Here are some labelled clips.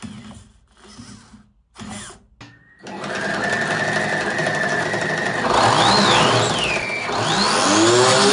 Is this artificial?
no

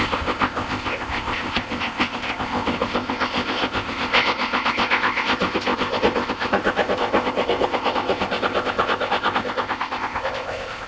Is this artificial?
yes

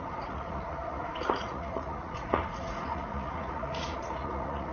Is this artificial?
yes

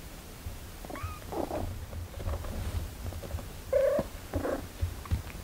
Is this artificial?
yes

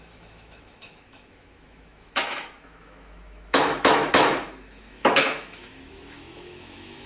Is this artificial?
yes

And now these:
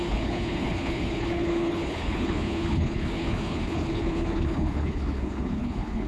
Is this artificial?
yes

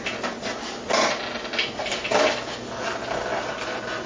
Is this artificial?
no